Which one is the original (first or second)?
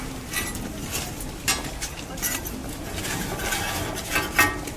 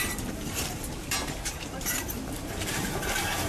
first